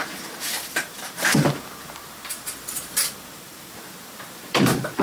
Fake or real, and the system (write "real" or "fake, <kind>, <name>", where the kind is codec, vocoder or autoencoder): fake, vocoder, BigVGAN v2